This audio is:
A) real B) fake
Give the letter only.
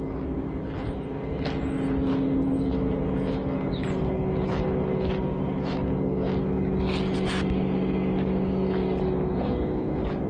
A